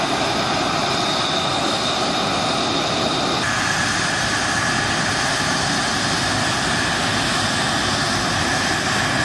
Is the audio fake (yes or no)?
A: no